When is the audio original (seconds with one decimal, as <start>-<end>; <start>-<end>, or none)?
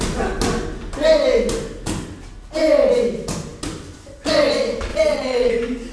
0.0-4.9; 5.5-5.9